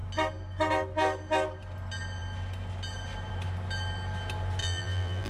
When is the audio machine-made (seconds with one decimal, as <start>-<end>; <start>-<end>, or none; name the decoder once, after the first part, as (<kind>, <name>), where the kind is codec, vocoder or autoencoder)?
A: 4.6-5.3 (vocoder, BigVGAN v2)